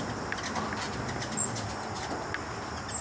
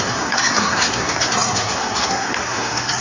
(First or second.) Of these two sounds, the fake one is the second